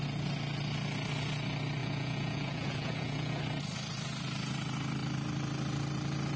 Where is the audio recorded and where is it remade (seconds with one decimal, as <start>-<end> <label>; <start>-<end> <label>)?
0.0-1.8 recorded; 1.8-3.4 remade; 3.4-6.4 recorded